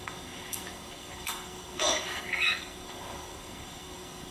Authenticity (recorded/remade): remade